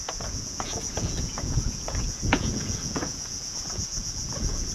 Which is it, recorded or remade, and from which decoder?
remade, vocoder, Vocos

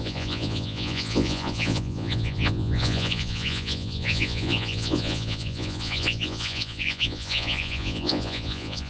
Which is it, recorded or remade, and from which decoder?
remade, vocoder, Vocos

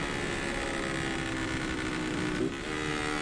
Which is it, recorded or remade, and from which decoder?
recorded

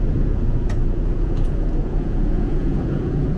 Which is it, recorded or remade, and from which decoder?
remade, vocoder, Vocos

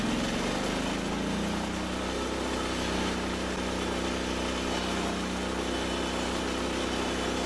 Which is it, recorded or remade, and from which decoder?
recorded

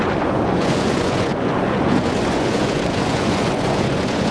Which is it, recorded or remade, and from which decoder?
remade, vocoder, Vocos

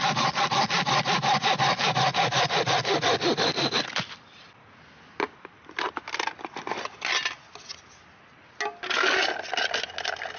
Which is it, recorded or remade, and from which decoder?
recorded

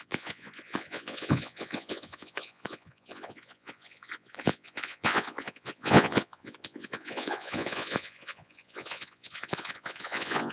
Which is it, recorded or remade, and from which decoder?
remade, vocoder, Vocos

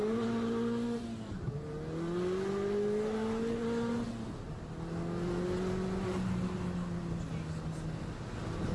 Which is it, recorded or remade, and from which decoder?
recorded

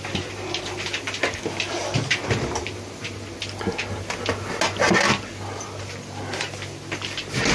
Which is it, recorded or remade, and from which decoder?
recorded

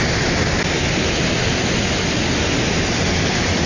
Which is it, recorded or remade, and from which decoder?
recorded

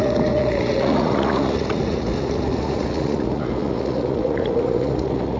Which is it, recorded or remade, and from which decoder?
remade, vocoder, Vocos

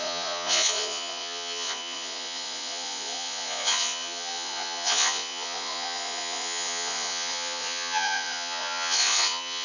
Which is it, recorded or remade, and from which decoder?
remade, vocoder, Vocos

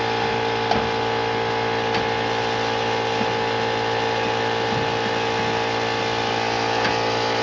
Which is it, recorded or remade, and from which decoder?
recorded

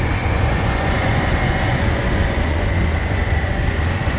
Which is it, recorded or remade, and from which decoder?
remade, vocoder, Vocos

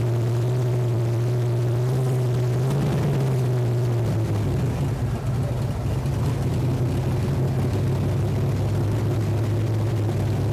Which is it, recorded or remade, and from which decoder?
recorded